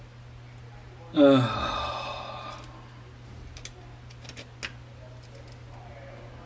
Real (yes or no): yes